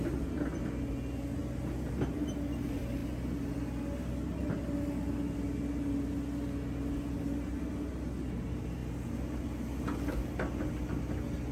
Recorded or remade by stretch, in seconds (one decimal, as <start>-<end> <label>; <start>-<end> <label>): 0.0-11.5 recorded